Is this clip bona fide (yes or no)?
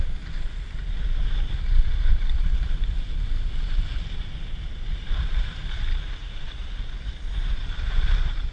no